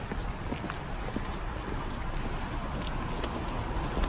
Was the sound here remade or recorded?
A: recorded